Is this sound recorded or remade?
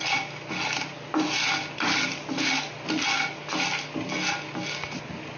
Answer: recorded